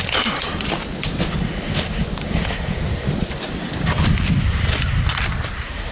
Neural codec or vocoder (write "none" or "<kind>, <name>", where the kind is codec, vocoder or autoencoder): vocoder, BigVGAN v2